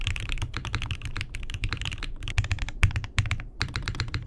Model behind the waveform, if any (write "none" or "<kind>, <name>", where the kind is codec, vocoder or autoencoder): vocoder, BigVGAN v2